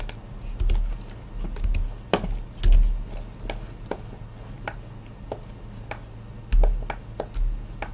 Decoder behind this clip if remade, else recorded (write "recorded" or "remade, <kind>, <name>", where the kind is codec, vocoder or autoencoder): recorded